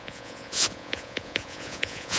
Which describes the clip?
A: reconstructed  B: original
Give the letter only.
A